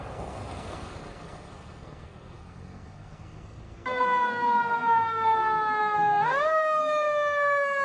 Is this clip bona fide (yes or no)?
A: no